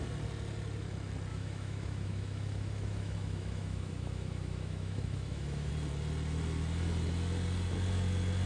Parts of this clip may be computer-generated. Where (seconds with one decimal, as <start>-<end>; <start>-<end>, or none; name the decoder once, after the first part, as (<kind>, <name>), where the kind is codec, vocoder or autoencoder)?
1.3-5.7 (autoencoder, DAC-VAE)